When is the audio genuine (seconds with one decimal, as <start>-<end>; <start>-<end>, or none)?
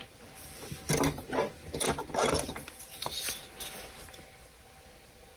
3.2-5.4